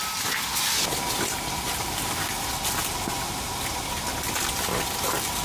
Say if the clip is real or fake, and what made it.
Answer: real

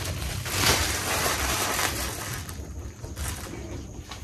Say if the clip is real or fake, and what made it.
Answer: fake, vocoder, BigVGAN v2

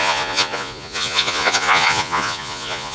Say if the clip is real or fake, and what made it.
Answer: fake, vocoder, Vocos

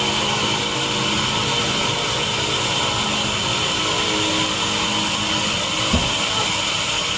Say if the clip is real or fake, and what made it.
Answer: real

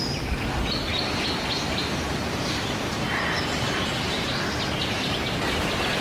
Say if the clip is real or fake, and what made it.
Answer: real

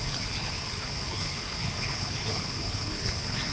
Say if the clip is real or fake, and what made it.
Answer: fake, codec, HILCodec